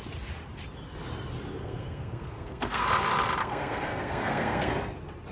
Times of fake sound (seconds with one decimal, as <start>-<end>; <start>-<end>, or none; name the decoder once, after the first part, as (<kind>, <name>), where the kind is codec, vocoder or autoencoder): 1.6-2.8 (codec, SNAC); 3.4-4.7